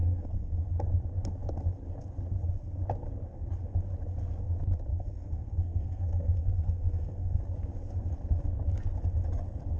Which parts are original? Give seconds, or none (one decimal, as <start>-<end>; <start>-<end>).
0.6-4.9; 7.4-9.8